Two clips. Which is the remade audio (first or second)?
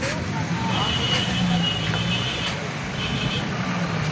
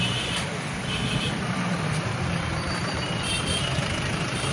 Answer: second